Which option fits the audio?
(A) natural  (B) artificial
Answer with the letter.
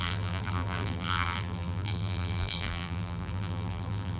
B